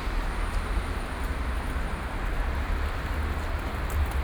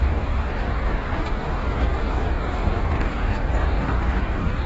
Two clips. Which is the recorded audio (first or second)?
first